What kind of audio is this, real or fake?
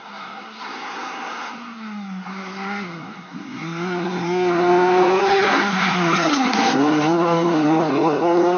fake